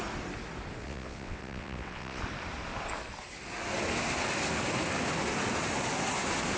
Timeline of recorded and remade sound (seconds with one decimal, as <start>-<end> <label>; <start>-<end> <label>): 0.0-0.8 recorded; 0.8-2.2 remade; 2.2-6.6 recorded